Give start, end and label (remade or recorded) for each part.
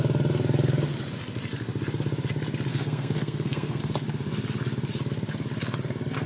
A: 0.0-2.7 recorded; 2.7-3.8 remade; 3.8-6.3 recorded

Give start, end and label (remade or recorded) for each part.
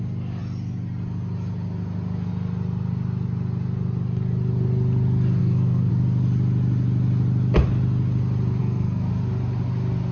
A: 0.0-5.4 recorded; 5.4-5.9 remade; 5.9-8.6 recorded; 8.6-9.1 remade; 9.1-10.1 recorded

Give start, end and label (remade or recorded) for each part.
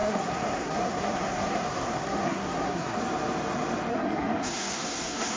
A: 0.0-3.0 remade; 3.0-3.9 recorded; 3.9-5.4 remade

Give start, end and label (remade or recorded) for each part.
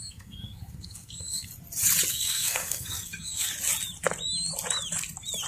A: 0.0-1.5 remade; 1.5-2.1 recorded; 2.1-3.5 remade; 3.5-5.5 recorded